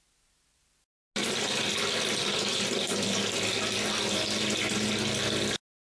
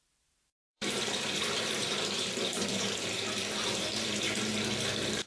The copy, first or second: second